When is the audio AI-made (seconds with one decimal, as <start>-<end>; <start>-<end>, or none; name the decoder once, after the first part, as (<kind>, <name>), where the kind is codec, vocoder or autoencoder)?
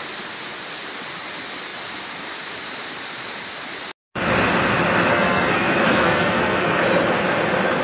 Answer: 5.1-6.8 (codec, SNAC)